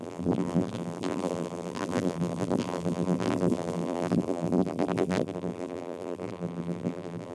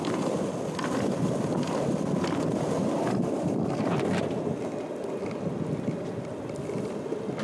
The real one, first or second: second